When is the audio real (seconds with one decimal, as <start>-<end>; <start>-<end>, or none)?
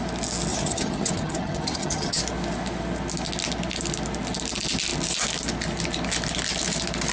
0.0-0.5; 2.2-7.1